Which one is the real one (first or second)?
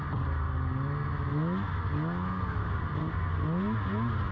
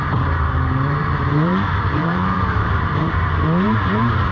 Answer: first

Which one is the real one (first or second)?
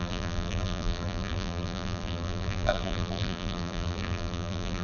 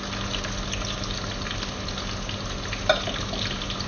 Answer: second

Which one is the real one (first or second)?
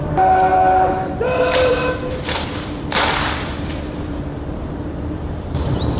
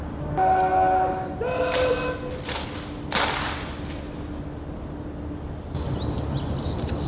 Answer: second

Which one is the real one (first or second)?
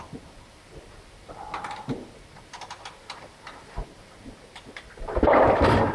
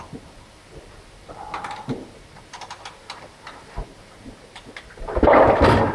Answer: second